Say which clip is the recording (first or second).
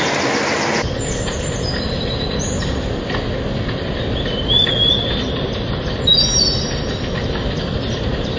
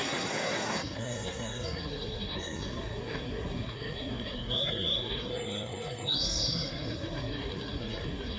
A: first